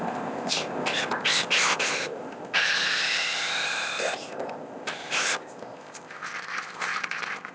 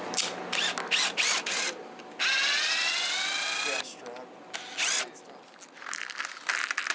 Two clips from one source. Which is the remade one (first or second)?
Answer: first